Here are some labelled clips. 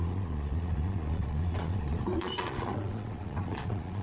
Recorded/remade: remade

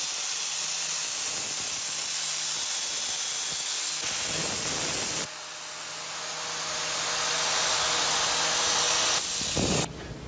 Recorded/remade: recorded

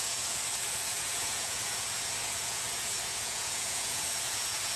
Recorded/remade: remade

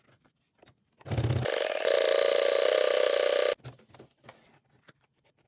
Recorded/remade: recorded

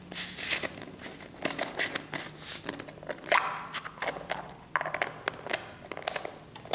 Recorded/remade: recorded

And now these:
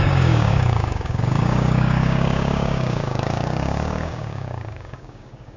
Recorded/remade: remade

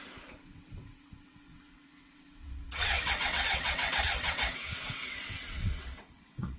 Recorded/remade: remade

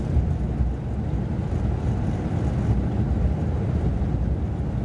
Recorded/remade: recorded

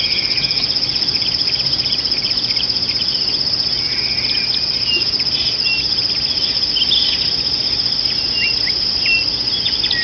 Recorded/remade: recorded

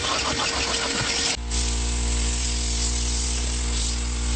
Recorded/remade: recorded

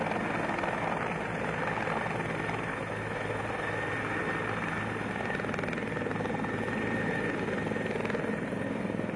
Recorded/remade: recorded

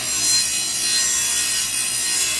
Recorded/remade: recorded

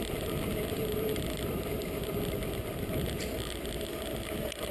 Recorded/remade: recorded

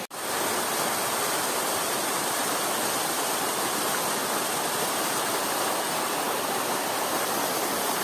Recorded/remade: recorded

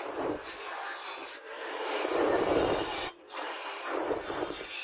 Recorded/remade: remade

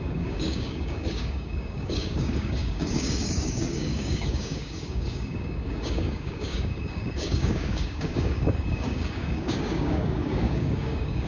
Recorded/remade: remade